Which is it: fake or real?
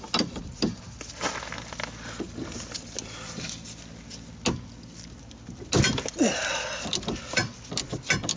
real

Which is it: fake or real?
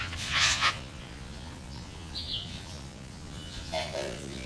fake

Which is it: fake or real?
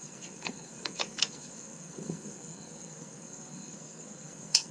fake